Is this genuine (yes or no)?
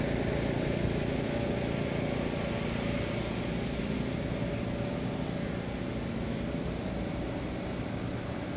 yes